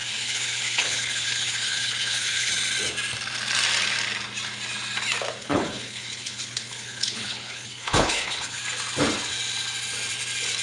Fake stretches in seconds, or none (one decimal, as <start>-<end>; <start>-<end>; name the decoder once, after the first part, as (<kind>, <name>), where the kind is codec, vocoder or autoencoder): 0.0-2.5 (codec, HILCodec); 5.4-8.6